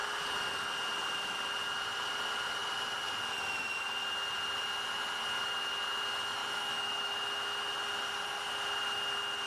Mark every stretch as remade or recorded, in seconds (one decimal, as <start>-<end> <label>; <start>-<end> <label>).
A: 0.0-6.4 recorded; 6.4-7.1 remade; 7.1-9.5 recorded